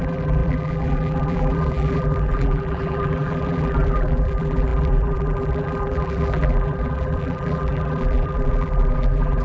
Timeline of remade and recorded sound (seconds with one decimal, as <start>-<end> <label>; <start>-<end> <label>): 0.0-9.4 remade